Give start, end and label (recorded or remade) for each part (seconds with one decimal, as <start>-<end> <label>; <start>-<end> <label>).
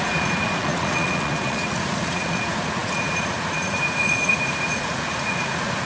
0.0-5.8 remade